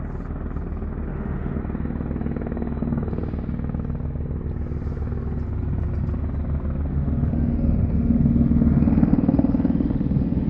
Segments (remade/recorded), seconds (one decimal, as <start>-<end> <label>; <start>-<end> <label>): 0.0-1.1 recorded; 1.1-1.6 remade; 1.6-6.9 recorded; 6.9-10.5 remade

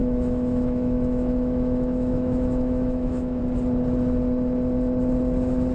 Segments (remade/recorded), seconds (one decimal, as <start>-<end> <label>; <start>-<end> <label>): 0.0-3.4 remade; 3.4-5.7 recorded